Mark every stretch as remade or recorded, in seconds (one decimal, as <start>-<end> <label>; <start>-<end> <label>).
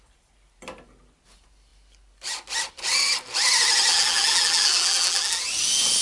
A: 0.0-3.9 recorded; 3.9-5.4 remade; 5.4-6.0 recorded